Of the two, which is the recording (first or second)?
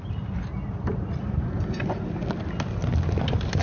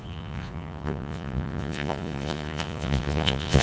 first